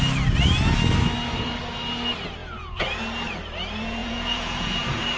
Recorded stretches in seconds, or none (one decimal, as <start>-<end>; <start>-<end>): 0.0-2.4; 3.0-4.0